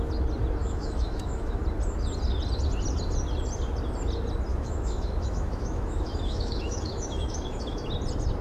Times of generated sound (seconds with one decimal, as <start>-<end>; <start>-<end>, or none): 0.6-1.6; 4.5-7.9